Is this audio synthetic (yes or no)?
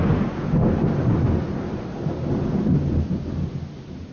no